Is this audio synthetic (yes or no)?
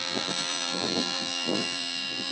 yes